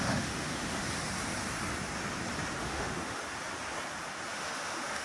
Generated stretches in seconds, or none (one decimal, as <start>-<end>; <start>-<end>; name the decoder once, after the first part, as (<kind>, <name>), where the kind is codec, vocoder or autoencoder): 0.0-0.8 (autoencoder, DAC-VAE); 2.6-3.2; 4.3-5.0